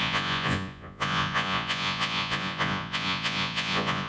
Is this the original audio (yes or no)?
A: no